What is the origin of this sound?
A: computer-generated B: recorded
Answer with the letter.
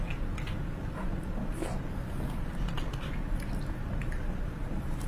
B